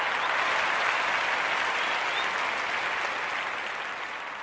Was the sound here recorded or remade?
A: recorded